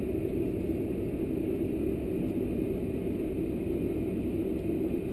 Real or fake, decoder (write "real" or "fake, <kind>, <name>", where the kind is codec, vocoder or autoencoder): real